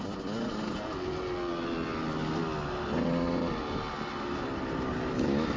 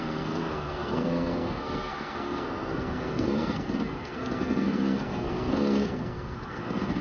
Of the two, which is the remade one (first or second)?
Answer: second